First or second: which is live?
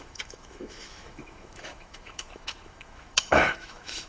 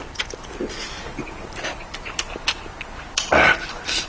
second